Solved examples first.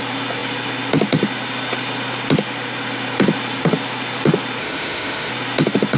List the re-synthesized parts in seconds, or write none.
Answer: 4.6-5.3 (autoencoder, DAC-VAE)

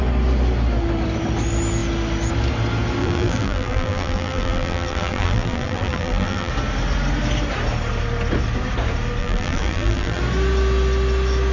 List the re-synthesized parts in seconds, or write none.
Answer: 3.0-6.5 (vocoder, BigVGAN v2); 9.2-10.2

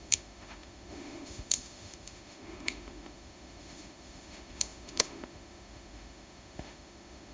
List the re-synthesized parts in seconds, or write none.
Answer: 0.0-7.3 (autoencoder, DAC-VAE)

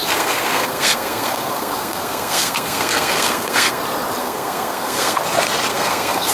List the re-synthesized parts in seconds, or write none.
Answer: 0.0-3.8 (codec, SNAC); 4.2-5.2; 5.7-6.3

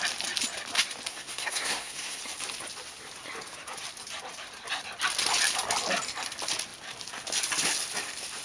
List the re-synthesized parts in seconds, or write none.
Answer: 1.1-2.2 (codec, SNAC)

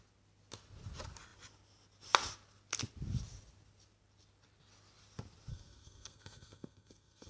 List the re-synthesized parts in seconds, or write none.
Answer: 5.5-7.3 (codec, SNAC)

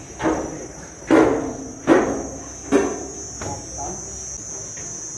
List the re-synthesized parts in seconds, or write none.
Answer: none